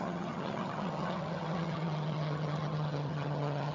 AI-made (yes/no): yes